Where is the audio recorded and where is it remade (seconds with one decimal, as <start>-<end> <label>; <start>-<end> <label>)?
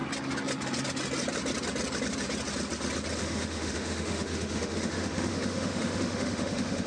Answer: 0.0-3.2 recorded; 3.2-6.9 remade